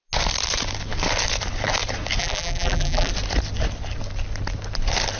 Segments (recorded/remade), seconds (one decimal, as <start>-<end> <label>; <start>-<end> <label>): 0.0-2.2 recorded; 2.2-3.1 remade; 3.1-5.2 recorded